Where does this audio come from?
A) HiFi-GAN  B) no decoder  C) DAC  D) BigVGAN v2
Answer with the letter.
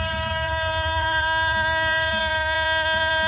D